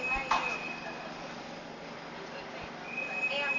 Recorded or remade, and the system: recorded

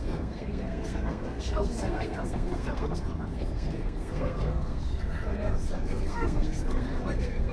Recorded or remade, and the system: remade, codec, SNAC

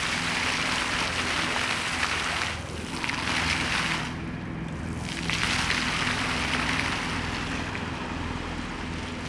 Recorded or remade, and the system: recorded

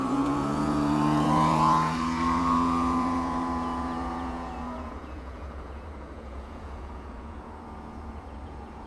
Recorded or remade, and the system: remade, vocoder, Vocos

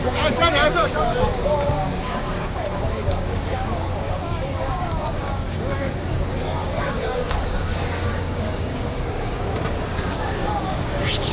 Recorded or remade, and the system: remade, codec, DAC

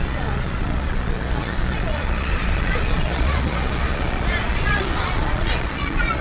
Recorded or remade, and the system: remade, vocoder, Vocos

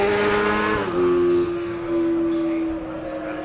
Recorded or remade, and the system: recorded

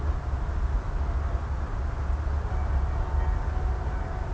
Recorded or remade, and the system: recorded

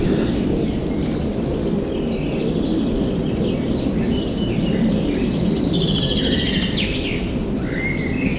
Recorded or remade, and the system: recorded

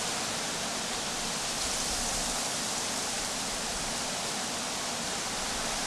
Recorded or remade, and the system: recorded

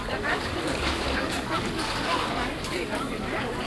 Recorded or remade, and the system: remade, codec, DAC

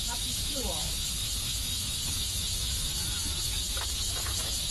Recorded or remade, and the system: remade, autoencoder, DAC-VAE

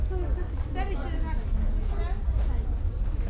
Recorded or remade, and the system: recorded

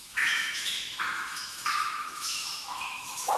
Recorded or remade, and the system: remade, autoencoder, DAC-VAE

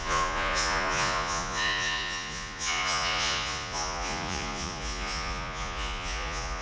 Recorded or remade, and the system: remade, vocoder, Vocos